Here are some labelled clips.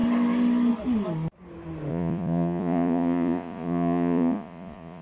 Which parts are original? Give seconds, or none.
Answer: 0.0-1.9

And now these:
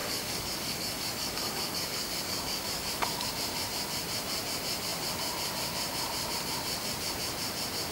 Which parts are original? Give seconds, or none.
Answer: 3.3-7.9

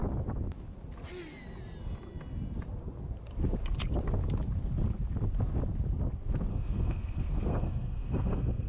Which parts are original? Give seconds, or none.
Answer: 0.0-6.5

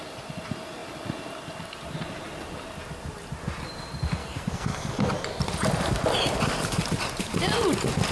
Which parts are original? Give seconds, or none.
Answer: 0.0-4.2; 5.0-8.1